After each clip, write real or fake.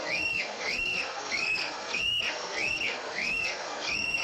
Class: fake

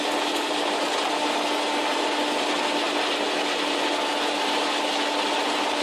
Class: real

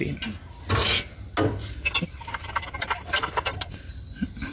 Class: real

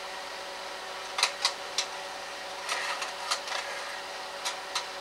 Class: real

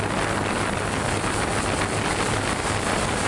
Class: real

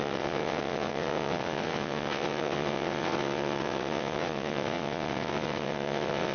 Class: fake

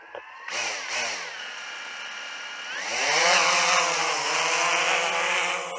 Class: real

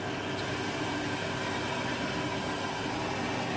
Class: real